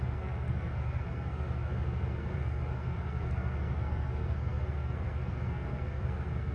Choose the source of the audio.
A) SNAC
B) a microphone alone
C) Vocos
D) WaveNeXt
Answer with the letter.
A